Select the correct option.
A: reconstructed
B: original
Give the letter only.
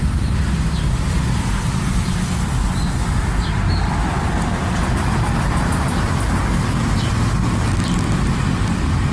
B